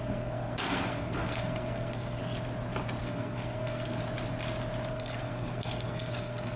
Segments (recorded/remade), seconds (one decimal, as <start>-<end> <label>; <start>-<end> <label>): 0.0-2.2 remade; 2.2-3.0 recorded; 3.0-4.0 remade; 4.0-4.9 recorded; 4.9-6.6 remade